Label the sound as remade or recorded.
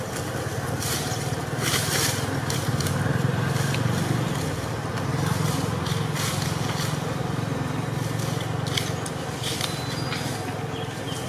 recorded